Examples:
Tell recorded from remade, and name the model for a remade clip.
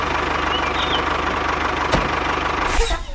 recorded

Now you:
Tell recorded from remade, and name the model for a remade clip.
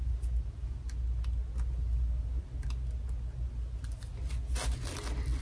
recorded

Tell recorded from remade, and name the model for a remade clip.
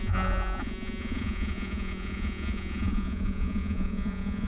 remade, vocoder, Vocos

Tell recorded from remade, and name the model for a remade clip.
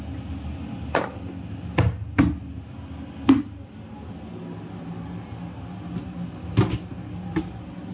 recorded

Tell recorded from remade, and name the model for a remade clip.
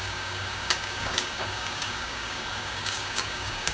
remade, codec, DAC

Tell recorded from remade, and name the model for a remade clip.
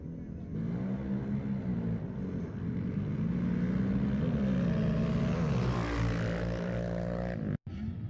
recorded